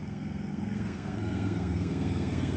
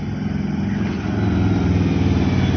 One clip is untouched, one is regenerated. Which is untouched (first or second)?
second